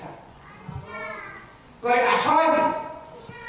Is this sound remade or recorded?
remade